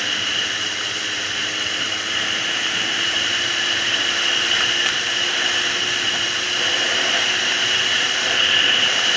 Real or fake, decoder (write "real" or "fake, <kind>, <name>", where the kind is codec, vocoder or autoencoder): fake, vocoder, BigVGAN v2